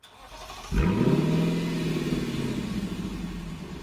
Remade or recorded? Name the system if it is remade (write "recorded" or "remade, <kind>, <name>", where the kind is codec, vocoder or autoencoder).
recorded